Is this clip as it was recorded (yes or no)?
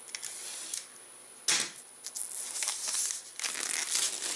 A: yes